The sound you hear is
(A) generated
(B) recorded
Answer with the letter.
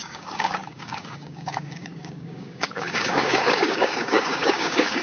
A